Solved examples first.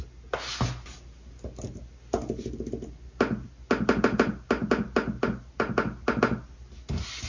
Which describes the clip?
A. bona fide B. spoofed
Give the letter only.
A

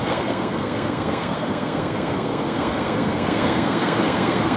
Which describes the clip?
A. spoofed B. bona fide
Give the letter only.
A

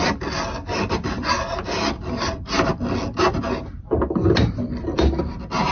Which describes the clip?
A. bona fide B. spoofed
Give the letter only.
A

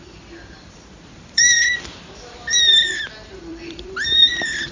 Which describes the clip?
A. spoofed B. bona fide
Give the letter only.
A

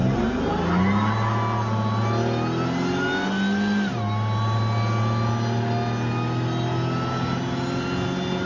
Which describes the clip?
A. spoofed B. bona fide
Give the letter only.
B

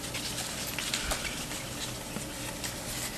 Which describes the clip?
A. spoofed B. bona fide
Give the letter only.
B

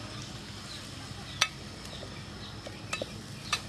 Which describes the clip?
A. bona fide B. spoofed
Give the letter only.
A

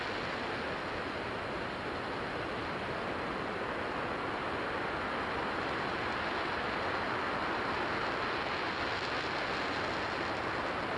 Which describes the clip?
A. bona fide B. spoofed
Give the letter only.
A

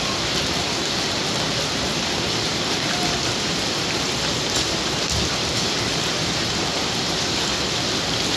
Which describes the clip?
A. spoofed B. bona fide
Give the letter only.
B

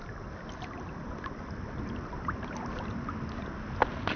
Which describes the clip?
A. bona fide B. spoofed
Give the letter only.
A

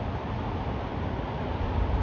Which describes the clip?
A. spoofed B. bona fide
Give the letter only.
B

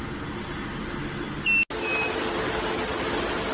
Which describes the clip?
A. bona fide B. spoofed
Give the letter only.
A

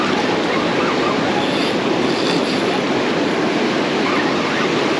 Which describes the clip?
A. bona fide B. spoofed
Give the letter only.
A